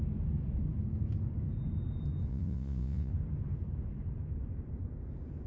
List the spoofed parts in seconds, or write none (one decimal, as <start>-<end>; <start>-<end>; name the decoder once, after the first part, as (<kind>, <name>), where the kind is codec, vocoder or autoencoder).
2.3-3.1 (vocoder, Vocos)